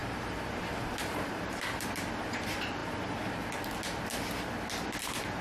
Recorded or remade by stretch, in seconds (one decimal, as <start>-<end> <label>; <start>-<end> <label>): 0.0-1.8 remade; 1.8-5.4 recorded

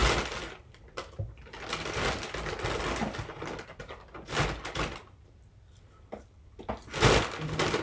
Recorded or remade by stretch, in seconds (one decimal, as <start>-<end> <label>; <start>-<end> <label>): 0.0-7.8 recorded

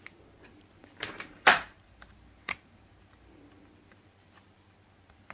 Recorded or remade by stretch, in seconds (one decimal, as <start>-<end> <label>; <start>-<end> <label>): 0.0-0.8 recorded; 0.8-3.1 remade; 3.1-5.3 recorded

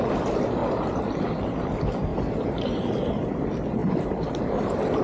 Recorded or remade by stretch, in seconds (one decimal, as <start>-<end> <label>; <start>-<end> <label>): 0.0-2.1 recorded; 2.1-2.8 remade; 2.8-5.0 recorded

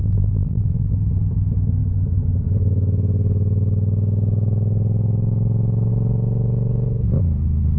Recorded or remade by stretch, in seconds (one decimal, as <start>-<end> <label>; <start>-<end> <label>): 0.0-0.9 remade; 0.9-7.8 recorded

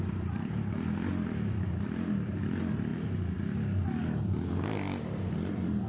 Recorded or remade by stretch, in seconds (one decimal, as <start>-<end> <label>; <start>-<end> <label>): 0.0-2.9 remade; 2.9-4.2 recorded; 4.2-5.9 remade

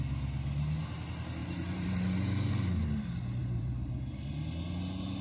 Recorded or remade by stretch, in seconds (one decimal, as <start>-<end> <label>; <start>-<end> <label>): 0.0-1.4 recorded; 1.4-2.5 remade; 2.5-3.4 recorded; 3.4-3.9 remade; 3.9-5.2 recorded

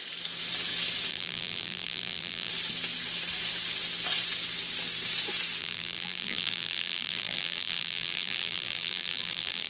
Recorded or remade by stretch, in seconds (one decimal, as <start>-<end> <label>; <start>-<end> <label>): 0.0-1.1 recorded; 1.1-2.5 remade; 2.5-5.6 recorded; 5.6-9.7 remade